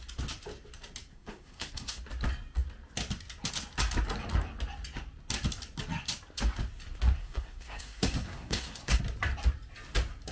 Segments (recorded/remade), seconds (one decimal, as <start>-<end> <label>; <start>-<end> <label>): 0.0-1.1 recorded; 1.1-2.0 remade; 2.0-7.2 recorded; 7.2-9.0 remade; 9.0-10.3 recorded